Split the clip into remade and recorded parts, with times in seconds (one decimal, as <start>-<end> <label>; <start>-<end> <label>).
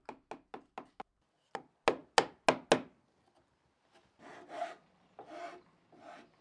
0.0-6.4 recorded